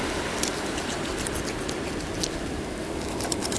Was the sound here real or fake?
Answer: real